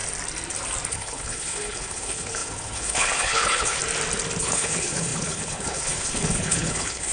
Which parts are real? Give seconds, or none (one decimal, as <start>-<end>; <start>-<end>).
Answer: 0.0-0.9; 3.8-4.4